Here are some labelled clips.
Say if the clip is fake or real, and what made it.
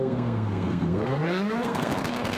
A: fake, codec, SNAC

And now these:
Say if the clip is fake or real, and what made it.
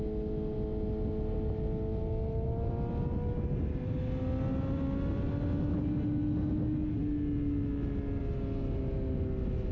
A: real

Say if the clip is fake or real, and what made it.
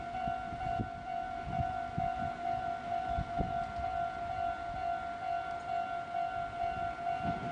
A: real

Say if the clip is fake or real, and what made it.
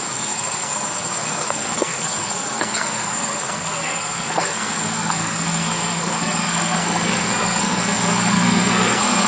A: fake, codec, SNAC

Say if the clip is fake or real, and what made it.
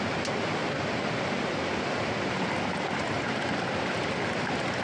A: real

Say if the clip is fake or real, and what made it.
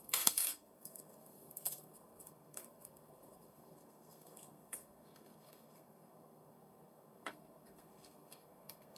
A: fake, codec, SNAC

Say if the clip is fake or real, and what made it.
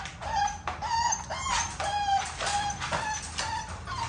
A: real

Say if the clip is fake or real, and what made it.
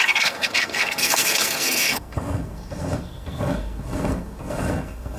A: fake, codec, SNAC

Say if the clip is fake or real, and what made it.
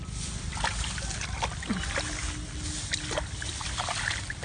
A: real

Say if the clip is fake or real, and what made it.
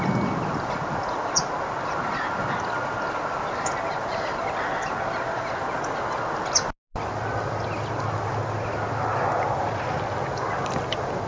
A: real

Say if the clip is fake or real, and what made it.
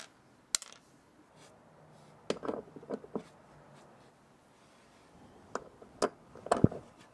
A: real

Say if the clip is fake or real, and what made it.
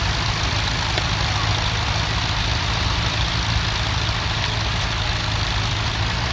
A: real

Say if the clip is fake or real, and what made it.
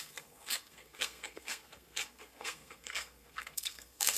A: fake, codec, SNAC